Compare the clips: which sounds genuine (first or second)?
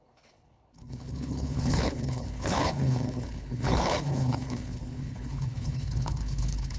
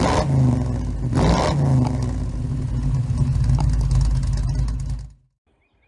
second